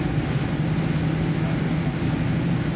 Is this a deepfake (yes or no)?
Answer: no